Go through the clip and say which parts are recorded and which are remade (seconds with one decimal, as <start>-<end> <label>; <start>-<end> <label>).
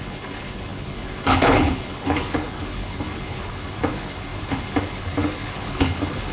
0.0-6.3 remade